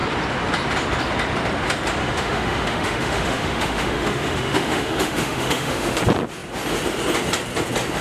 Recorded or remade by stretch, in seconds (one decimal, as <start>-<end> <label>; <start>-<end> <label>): 0.0-2.0 recorded; 2.0-6.0 remade; 6.0-8.0 recorded